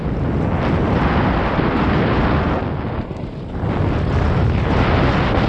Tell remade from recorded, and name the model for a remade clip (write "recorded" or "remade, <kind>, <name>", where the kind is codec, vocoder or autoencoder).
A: recorded